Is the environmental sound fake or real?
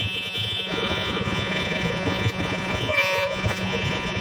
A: fake